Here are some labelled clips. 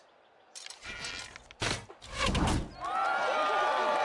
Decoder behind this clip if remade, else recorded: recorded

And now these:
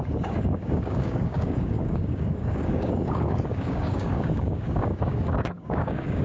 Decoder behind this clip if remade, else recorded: remade, codec, DAC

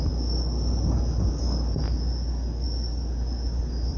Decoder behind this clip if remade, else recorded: recorded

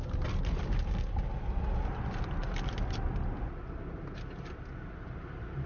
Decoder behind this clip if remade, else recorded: recorded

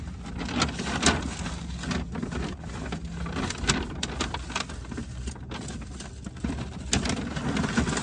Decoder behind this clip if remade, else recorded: recorded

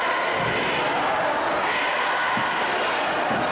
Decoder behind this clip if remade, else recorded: recorded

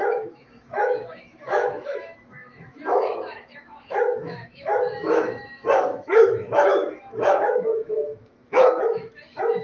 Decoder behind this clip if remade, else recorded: remade, autoencoder, DAC-VAE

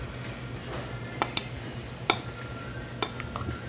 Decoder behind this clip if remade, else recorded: recorded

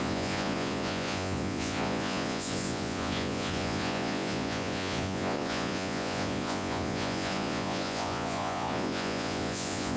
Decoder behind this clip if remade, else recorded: remade, vocoder, Vocos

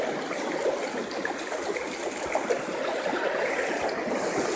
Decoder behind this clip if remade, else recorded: recorded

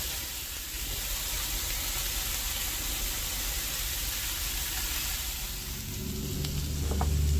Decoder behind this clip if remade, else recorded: recorded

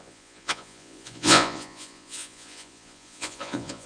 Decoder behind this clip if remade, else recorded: remade, vocoder, Vocos